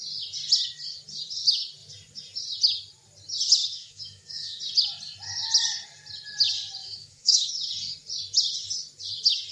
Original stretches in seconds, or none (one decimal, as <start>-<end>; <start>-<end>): 0.0-3.6; 4.6-6.8; 7.5-9.5